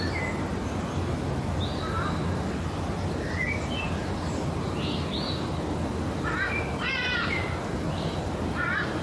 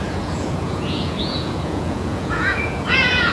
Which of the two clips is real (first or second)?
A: first